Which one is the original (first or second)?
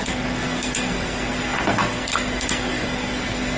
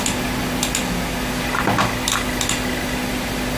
second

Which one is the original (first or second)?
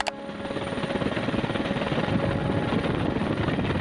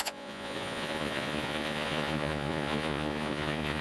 first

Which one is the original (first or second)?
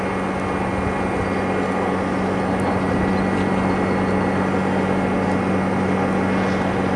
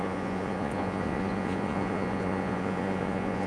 first